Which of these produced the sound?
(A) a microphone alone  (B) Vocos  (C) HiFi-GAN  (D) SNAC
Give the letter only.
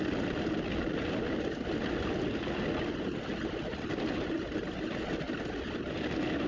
A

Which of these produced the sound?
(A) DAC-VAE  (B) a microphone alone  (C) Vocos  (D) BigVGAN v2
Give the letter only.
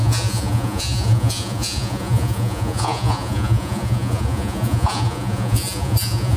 C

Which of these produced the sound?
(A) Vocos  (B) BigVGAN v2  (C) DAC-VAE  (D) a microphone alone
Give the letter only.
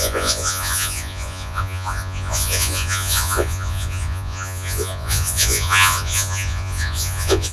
A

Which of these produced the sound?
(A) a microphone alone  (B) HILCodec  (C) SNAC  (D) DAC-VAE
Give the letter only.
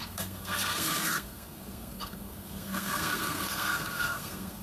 C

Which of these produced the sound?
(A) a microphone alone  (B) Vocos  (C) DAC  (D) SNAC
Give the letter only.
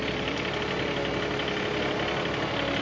A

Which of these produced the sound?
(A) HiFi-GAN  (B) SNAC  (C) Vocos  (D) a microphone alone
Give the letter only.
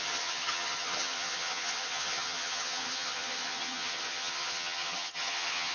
A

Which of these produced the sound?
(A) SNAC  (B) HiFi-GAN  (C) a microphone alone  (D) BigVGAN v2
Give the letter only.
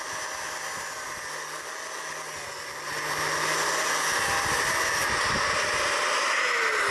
C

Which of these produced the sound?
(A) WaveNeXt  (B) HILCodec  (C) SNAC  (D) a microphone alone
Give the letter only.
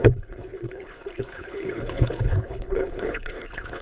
B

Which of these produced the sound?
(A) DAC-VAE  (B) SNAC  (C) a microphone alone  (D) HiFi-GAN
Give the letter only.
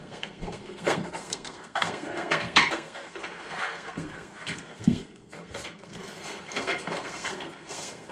B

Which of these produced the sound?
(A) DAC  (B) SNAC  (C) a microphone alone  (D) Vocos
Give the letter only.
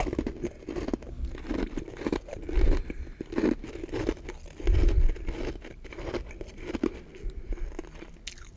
C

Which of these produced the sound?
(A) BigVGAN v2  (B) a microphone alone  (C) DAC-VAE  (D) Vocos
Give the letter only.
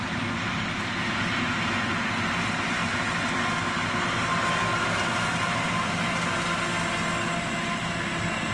B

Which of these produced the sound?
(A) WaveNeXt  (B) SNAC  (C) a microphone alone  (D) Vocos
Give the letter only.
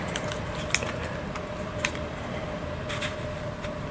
C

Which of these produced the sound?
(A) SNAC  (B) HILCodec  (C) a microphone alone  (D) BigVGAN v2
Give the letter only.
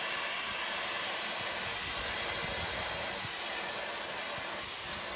C